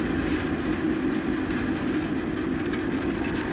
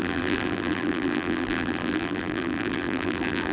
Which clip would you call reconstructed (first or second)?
second